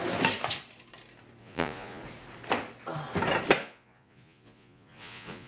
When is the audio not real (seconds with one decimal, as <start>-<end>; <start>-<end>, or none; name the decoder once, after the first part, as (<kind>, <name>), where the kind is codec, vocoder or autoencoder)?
1.4-2.0 (vocoder, Vocos); 3.6-5.5